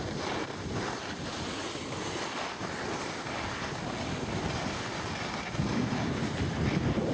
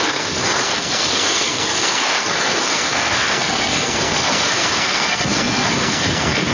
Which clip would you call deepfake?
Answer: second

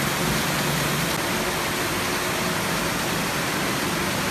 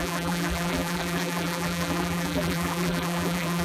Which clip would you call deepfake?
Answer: second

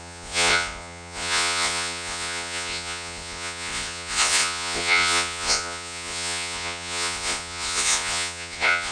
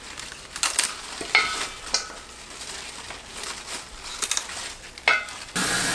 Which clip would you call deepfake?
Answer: first